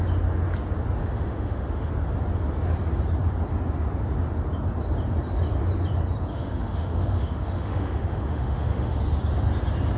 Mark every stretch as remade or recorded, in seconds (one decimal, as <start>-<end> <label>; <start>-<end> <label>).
0.0-1.0 recorded; 1.0-1.9 remade; 1.9-6.3 recorded; 6.3-9.0 remade; 9.0-10.0 recorded